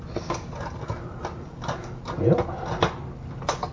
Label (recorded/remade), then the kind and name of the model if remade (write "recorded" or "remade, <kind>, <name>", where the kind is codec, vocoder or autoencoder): recorded